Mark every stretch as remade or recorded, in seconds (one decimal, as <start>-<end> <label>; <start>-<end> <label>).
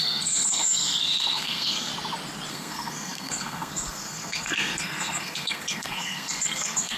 0.0-1.9 remade; 1.9-2.5 recorded; 2.5-7.0 remade